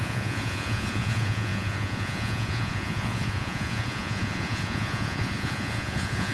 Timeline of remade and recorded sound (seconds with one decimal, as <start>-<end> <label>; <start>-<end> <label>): 0.0-6.3 remade